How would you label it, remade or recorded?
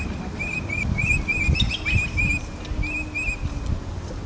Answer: recorded